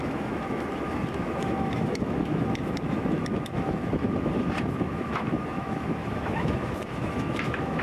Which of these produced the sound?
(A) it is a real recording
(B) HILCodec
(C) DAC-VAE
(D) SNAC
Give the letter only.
C